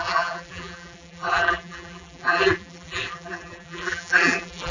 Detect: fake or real fake